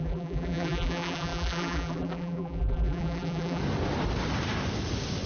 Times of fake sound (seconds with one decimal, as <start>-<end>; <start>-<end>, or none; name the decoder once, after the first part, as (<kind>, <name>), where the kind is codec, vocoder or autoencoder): 0.0-3.6 (vocoder, BigVGAN v2)